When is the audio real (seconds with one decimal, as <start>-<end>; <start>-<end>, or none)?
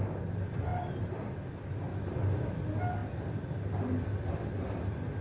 0.0-0.7; 1.7-5.2